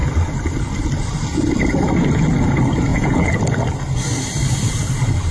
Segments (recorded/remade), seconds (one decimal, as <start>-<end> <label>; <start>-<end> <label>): 0.0-2.9 recorded; 2.9-3.4 remade; 3.4-5.3 recorded